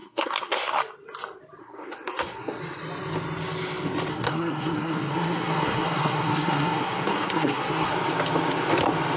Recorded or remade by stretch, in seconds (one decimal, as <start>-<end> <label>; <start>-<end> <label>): 0.0-0.8 remade; 0.8-1.6 recorded; 1.6-2.6 remade; 2.6-4.1 recorded; 4.1-7.9 remade; 7.9-9.2 recorded